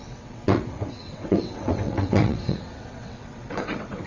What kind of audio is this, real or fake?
fake